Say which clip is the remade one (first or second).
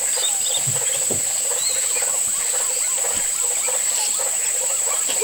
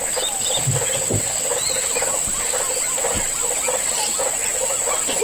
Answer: first